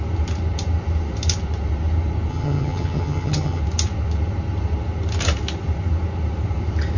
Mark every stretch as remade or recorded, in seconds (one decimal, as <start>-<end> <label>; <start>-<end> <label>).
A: 0.0-2.3 recorded; 2.3-3.6 remade; 3.6-7.0 recorded